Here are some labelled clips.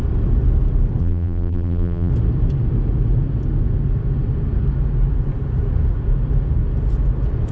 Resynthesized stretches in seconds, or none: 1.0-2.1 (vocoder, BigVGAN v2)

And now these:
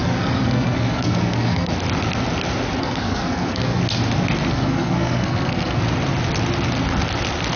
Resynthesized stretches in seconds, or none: 0.0-1.7 (codec, SNAC); 2.8-3.8; 4.5-5.8

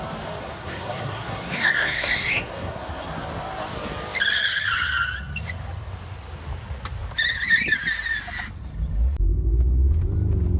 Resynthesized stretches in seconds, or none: 0.4-3.1 (codec, SNAC)

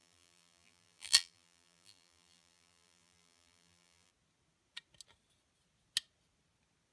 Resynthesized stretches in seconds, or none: 0.0-4.1 (vocoder, BigVGAN v2)

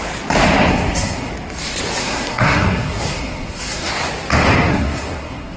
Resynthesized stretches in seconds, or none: 0.7-1.3 (codec, SNAC); 2.0-3.9; 4.7-5.6

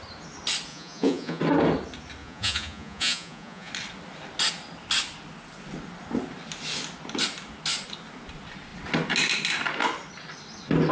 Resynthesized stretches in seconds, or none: 0.7-1.4 (vocoder, Vocos); 2.2-3.7